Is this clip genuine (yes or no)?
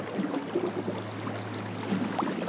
yes